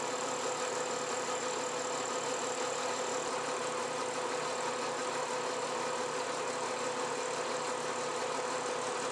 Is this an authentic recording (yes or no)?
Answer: yes